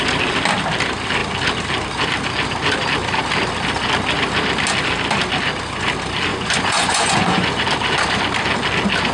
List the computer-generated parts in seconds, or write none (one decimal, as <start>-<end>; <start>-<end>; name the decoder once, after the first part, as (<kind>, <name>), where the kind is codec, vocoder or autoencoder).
6.3-7.6 (vocoder, Vocos)

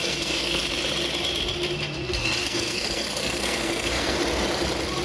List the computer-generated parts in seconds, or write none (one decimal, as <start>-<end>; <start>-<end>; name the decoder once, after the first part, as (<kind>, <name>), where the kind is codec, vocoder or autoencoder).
0.0-0.6 (codec, SNAC); 2.4-4.2

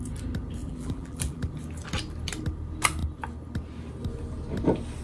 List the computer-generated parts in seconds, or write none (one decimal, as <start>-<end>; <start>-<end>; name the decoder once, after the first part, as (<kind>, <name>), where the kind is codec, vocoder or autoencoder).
0.6-1.5 (vocoder, BigVGAN v2)